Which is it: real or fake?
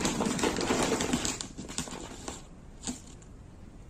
real